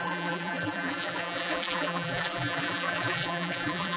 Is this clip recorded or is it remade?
remade